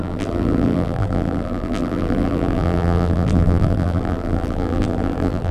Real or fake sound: fake